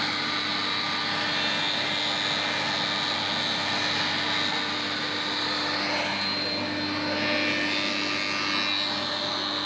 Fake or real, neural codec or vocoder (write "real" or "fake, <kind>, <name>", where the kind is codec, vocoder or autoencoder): real